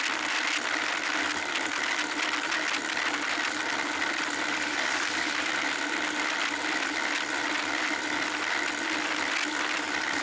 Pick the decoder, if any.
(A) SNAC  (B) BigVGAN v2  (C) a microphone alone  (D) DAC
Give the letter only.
C